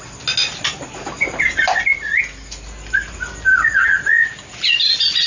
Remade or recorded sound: recorded